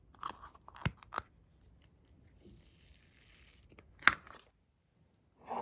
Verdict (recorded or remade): recorded